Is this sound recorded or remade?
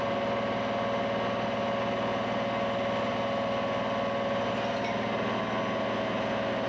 recorded